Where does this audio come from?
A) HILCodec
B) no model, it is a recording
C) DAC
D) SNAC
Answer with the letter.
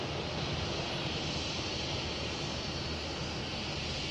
B